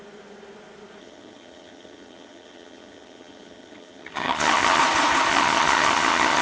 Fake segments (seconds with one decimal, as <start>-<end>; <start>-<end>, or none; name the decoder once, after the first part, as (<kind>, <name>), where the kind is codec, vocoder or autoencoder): 1.0-4.8 (vocoder, HiFi-GAN); 5.3-6.4